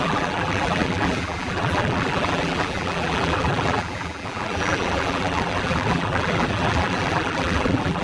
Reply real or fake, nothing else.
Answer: fake